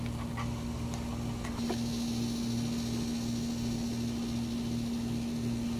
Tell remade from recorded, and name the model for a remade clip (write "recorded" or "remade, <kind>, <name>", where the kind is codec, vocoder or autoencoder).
recorded